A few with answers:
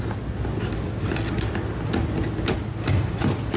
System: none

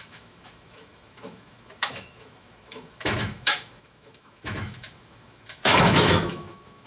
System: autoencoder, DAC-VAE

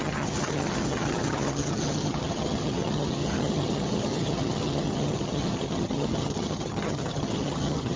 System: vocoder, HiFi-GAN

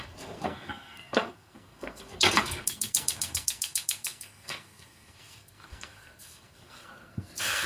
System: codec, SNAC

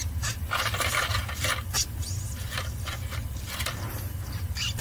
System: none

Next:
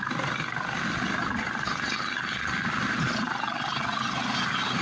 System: none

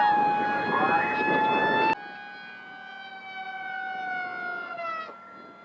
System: none